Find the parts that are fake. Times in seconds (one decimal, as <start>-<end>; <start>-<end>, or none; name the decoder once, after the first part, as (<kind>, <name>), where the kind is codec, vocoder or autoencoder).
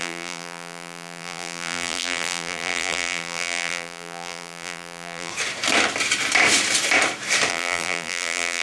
0.0-5.3 (vocoder, BigVGAN v2); 7.5-8.6